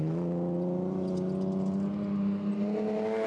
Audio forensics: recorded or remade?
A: recorded